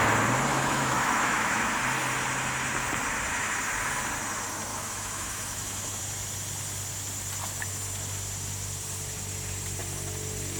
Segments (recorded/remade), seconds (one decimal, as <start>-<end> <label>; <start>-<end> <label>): 0.0-0.5 recorded; 0.5-1.7 remade; 1.7-4.7 recorded; 4.7-6.0 remade; 6.0-10.6 recorded